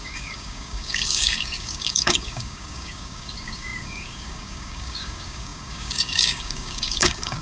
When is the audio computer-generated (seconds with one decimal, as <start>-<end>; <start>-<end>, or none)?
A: 0.0-7.4